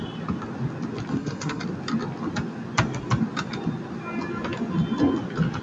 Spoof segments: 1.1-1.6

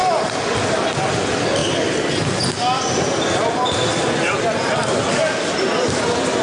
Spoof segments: none

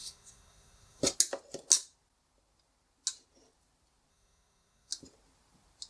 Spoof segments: 0.0-1.0; 4.1-4.9

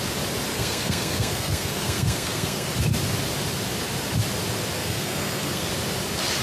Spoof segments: 0.5-2.7; 4.8-5.7

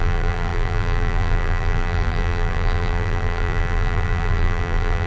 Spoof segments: 0.0-5.1